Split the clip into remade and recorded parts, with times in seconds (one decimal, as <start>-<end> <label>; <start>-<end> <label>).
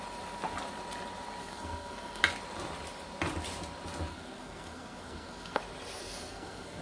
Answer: 0.0-1.4 recorded; 1.4-2.2 remade; 2.2-4.1 recorded; 4.1-5.6 remade; 5.6-6.0 recorded; 6.0-6.8 remade